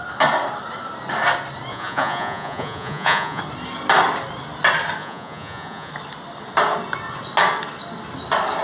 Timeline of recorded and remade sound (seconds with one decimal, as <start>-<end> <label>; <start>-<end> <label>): 0.0-1.7 recorded; 1.7-3.4 remade; 3.4-5.0 recorded; 5.0-5.9 remade; 5.9-8.6 recorded